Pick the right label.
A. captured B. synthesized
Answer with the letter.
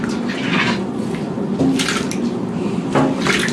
A